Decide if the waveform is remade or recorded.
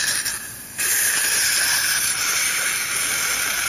recorded